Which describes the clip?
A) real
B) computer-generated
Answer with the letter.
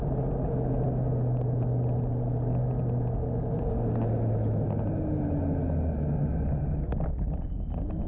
A